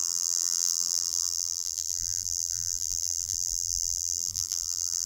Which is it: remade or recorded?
remade